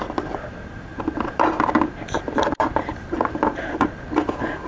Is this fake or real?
fake